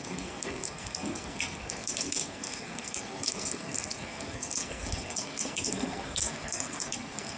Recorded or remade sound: remade